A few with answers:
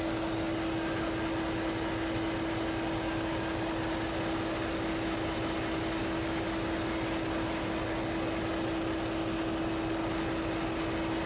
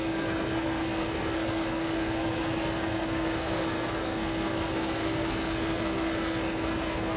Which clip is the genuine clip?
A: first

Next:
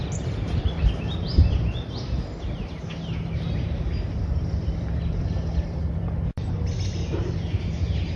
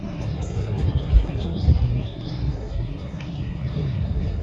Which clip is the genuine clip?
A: first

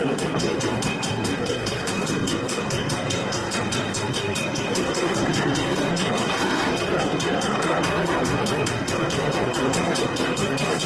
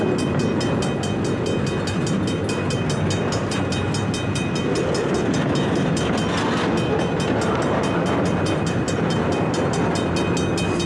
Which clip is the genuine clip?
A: second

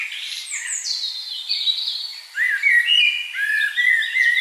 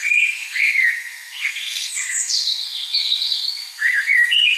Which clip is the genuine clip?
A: first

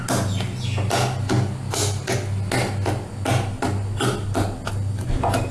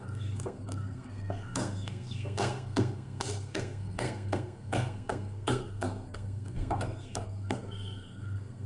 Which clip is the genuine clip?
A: first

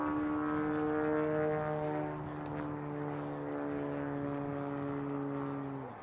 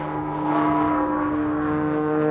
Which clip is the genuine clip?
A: first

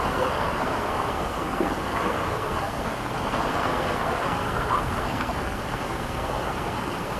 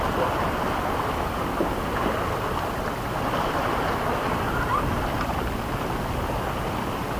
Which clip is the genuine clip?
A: second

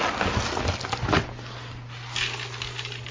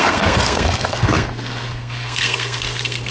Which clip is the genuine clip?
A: first